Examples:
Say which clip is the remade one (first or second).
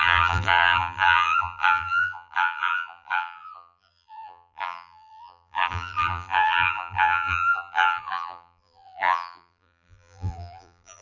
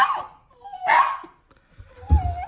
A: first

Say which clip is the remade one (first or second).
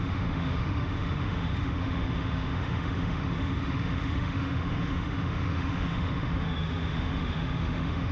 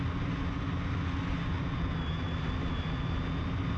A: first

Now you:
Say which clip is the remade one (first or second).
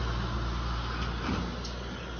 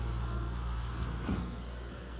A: second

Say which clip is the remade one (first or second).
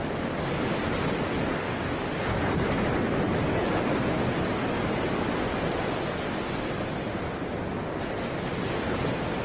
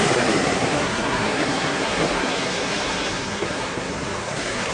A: second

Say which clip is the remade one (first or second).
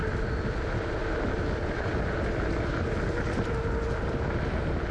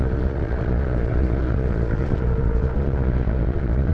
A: second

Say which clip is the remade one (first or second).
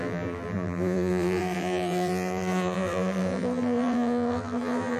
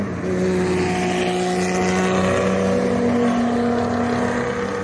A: first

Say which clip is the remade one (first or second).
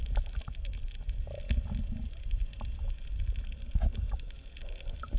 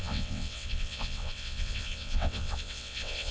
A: second